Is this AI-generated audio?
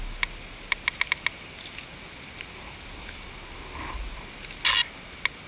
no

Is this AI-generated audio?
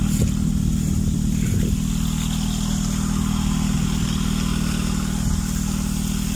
no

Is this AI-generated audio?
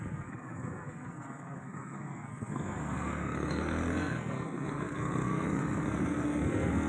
yes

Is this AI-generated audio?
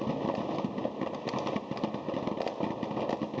no